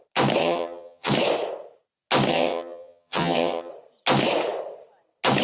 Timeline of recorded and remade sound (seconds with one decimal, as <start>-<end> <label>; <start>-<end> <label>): 0.0-0.4 recorded; 0.4-1.1 remade; 1.1-2.3 recorded; 2.3-3.7 remade; 3.7-5.4 recorded